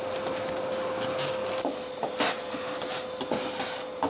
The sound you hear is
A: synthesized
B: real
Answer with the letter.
B